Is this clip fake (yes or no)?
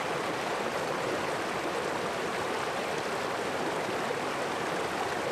no